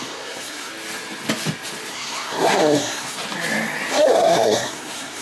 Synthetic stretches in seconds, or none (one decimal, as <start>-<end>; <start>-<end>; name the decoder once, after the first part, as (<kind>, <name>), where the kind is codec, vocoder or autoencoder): 0.0-0.7 (codec, SNAC); 1.9-3.2; 3.9-5.2